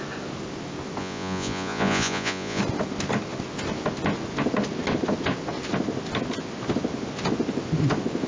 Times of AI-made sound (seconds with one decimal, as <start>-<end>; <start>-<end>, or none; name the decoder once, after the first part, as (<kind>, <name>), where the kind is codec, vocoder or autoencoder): 1.0-2.6 (vocoder, Vocos)